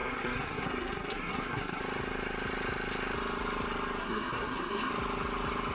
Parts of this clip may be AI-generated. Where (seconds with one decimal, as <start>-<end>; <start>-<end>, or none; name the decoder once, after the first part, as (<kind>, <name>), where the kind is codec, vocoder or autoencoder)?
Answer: 0.0-1.8 (codec, SNAC); 4.0-4.9

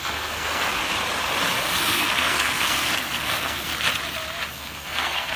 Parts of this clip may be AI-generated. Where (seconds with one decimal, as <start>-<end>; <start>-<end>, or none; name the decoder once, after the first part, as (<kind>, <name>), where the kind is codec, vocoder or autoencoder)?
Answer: 0.0-0.8 (codec, SNAC); 1.8-3.7; 4.5-5.4

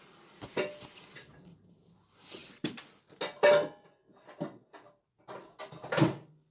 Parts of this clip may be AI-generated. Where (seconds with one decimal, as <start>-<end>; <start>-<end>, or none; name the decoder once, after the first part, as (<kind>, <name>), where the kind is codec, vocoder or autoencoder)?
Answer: none

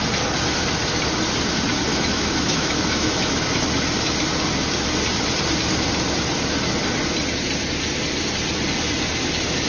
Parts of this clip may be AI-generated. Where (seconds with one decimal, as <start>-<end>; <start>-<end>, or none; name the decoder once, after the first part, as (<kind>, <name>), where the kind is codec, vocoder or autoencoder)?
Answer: 1.9-3.7 (autoencoder, DAC-VAE)

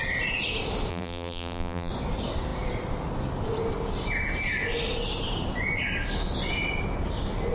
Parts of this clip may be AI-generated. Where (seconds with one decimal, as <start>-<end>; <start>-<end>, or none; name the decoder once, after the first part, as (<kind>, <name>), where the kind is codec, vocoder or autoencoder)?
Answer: 0.9-1.9 (vocoder, BigVGAN v2)

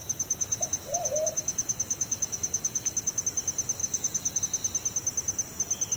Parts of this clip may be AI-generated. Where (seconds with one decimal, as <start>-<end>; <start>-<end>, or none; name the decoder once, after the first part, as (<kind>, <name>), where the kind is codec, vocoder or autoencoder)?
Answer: 0.0-3.2 (autoencoder, DAC-VAE); 3.8-4.4